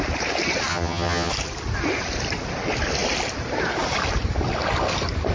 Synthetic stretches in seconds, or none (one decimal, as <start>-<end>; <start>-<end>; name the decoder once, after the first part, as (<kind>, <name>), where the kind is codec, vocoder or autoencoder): 0.7-1.3 (vocoder, HiFi-GAN)

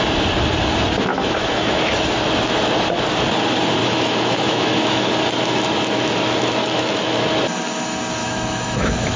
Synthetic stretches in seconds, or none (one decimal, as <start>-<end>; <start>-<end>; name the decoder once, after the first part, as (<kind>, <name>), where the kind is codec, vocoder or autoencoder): 1.1-1.9 (autoencoder, DAC-VAE); 3.8-5.1; 6.6-7.2; 8.2-9.2

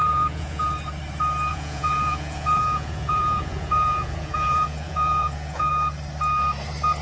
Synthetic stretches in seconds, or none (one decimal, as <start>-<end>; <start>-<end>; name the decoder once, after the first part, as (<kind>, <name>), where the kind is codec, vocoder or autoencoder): 0.0-0.7 (vocoder, Vocos); 1.5-5.7

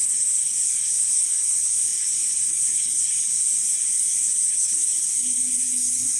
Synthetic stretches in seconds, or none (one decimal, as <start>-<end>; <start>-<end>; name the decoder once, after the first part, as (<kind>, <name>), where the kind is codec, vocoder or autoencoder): 0.0-6.2 (codec, HILCodec)